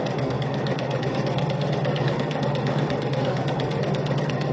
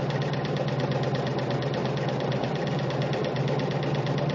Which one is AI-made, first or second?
first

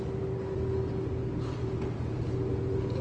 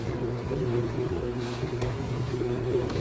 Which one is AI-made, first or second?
second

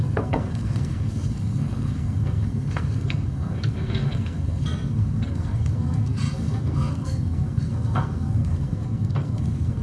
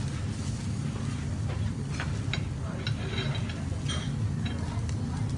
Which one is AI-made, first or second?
first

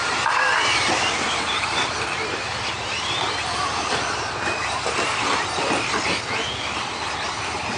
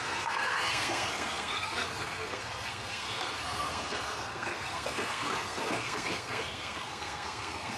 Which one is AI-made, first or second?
second